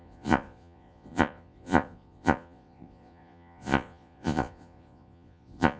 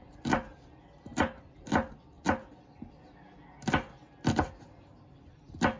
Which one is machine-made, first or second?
first